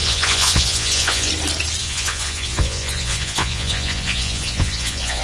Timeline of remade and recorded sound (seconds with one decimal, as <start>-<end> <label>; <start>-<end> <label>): 0.0-1.3 remade; 1.3-1.8 recorded; 1.8-5.2 remade